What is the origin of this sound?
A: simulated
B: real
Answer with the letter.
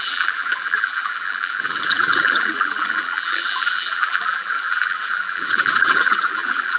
A